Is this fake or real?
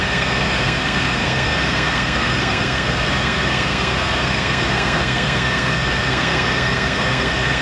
fake